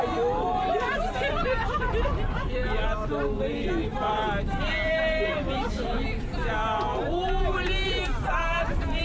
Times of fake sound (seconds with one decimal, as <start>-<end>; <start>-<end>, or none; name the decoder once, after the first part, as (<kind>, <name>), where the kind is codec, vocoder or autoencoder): none